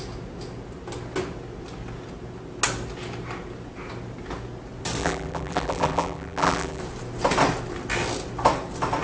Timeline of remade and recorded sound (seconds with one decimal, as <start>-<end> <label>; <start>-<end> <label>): 0.0-5.0 recorded; 5.0-6.8 remade; 6.8-9.0 recorded